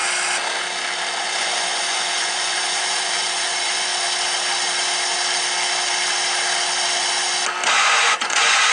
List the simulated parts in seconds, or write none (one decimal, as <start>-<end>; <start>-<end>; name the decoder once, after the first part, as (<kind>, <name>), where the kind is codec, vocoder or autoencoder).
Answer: 1.2-3.9 (vocoder, Vocos); 7.7-8.7